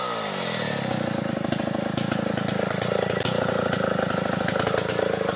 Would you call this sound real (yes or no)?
yes